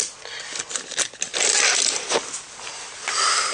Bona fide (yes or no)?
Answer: yes